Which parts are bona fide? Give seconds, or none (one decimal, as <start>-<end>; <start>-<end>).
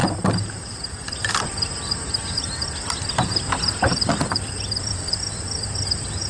1.3-3.9; 5.7-6.3